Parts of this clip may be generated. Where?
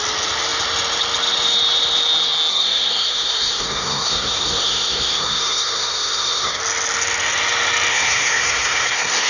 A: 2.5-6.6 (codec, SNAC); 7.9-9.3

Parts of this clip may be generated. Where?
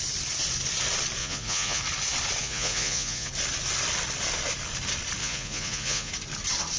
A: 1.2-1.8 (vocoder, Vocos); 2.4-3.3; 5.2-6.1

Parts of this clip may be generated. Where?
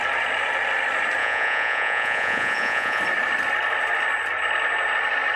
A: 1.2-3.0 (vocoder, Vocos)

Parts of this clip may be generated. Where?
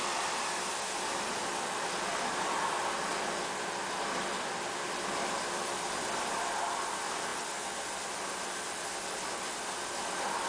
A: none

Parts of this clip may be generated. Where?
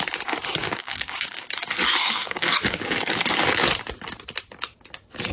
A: 0.6-1.5 (codec, DAC); 2.0-3.4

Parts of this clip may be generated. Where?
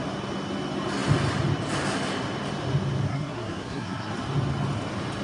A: 3.1-4.1 (codec, SNAC)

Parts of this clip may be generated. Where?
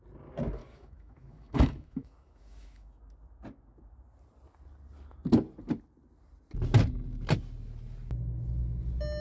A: 0.6-3.0 (autoencoder, DAC-VAE)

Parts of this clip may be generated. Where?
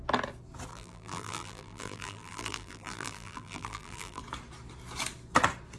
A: 0.7-4.2 (vocoder, BigVGAN v2)